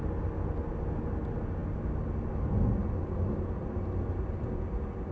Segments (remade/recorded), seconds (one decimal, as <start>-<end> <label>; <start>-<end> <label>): 0.0-5.1 recorded